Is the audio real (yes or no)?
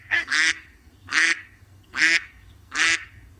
no